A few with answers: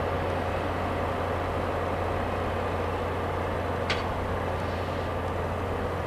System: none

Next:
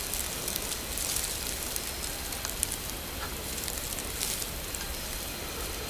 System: none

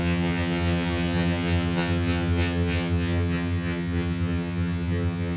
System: vocoder, HiFi-GAN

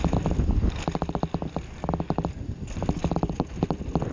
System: none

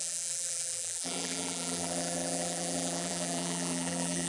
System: vocoder, BigVGAN v2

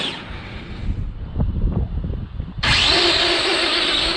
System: vocoder, BigVGAN v2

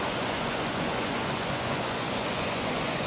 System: vocoder, Vocos